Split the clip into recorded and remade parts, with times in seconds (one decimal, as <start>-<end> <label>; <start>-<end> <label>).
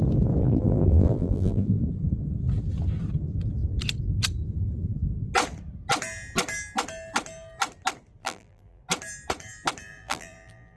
0.0-0.4 recorded; 0.4-1.8 remade; 1.8-8.2 recorded; 8.2-8.8 remade; 8.8-9.9 recorded; 9.9-10.8 remade